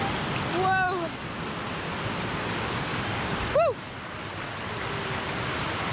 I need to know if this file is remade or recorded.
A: recorded